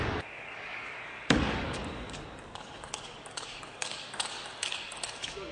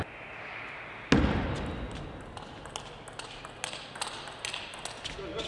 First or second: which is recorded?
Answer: second